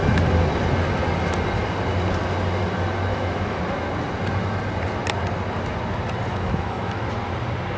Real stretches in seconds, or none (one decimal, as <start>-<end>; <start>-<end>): 0.0-3.1; 3.6-6.3; 7.0-7.8